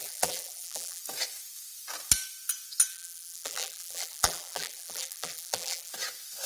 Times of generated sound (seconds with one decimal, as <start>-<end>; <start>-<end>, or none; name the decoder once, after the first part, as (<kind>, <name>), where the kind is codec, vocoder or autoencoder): 0.0-1.0 (vocoder, BigVGAN v2); 2.9-5.9